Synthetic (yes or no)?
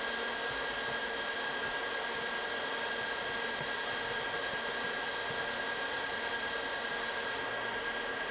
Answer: no